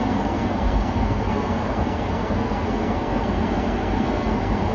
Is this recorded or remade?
remade